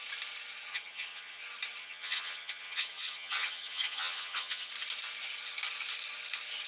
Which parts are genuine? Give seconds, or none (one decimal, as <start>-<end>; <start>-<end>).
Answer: 0.0-0.7; 1.4-1.8; 4.7-6.7